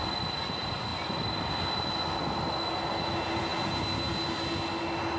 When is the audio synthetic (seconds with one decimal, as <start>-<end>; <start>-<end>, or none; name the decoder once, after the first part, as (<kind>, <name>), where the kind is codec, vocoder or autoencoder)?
none